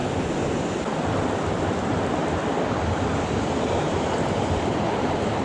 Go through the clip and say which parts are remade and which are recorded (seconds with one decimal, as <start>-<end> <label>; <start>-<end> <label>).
0.0-3.2 recorded; 3.2-5.4 remade